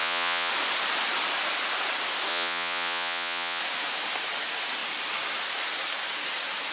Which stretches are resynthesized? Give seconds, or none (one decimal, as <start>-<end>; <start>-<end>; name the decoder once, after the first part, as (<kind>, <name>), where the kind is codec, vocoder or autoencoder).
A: 0.0-0.5 (vocoder, Vocos); 2.3-3.6